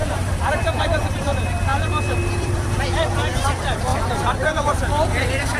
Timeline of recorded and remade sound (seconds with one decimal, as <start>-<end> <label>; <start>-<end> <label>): 0.0-3.9 remade; 3.9-4.5 recorded; 4.5-5.6 remade